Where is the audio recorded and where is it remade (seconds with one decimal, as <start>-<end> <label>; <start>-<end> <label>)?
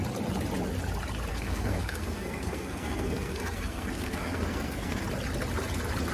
0.0-1.3 recorded; 1.3-5.0 remade; 5.0-6.1 recorded